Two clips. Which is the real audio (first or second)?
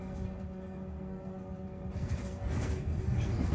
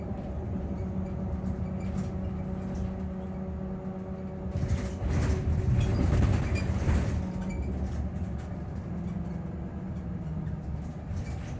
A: second